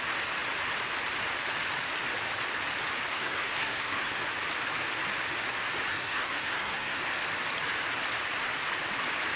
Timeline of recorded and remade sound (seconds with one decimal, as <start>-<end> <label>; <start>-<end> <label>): 0.0-3.1 recorded; 3.1-4.2 remade; 4.2-5.9 recorded; 5.9-7.0 remade; 7.0-9.4 recorded